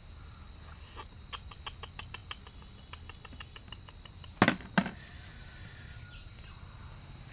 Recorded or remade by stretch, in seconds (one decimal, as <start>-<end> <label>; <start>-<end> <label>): 0.0-7.3 recorded